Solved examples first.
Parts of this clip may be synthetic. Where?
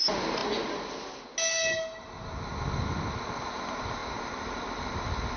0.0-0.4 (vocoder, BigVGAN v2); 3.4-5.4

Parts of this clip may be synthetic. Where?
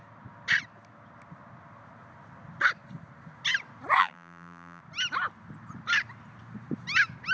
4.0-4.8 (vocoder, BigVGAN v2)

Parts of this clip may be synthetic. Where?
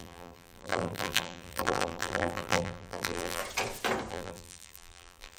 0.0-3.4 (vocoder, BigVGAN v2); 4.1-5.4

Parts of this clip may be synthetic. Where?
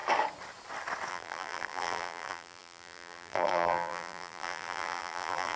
1.1-5.6 (vocoder, BigVGAN v2)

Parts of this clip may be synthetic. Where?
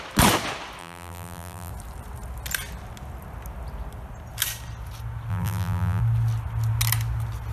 0.8-1.7 (vocoder, BigVGAN v2); 5.3-6.0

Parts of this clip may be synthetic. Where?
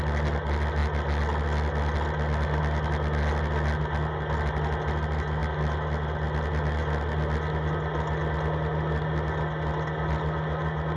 none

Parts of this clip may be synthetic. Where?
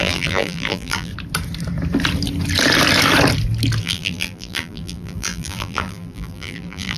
0.0-1.1 (vocoder, BigVGAN v2); 3.8-7.0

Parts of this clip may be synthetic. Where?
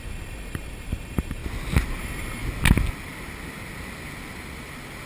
0.0-1.4 (vocoder, BigVGAN v2); 2.0-2.4